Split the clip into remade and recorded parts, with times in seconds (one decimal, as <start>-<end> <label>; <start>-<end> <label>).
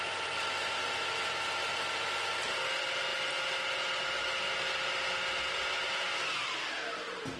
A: 0.0-7.4 recorded